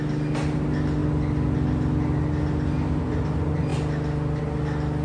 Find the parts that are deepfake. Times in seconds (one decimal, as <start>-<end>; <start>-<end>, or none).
none